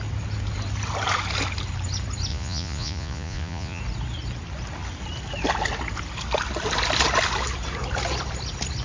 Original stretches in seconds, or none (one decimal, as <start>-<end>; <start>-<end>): 0.0-2.3; 3.8-8.8